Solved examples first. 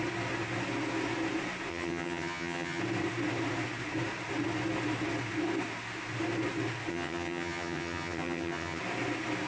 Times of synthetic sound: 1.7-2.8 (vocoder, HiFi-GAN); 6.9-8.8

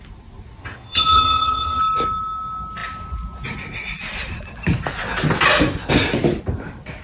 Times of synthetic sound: 0.6-1.8 (vocoder, HiFi-GAN)

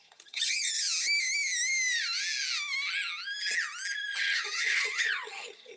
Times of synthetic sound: 0.0-0.7 (vocoder, HiFi-GAN); 4.2-5.8

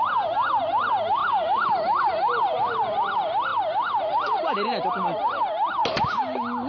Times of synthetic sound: none

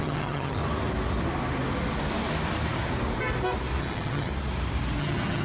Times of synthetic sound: 0.0-0.6 (vocoder, HiFi-GAN); 3.8-4.3; 5.0-5.4

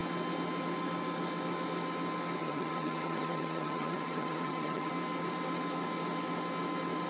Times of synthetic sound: 2.4-4.9 (vocoder, HiFi-GAN)